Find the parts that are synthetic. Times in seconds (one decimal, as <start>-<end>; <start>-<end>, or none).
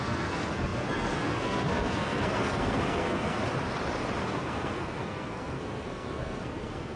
0.0-3.4; 4.2-7.0